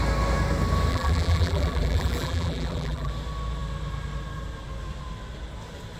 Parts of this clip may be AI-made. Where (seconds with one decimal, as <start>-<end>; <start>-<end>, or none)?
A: 0.9-3.1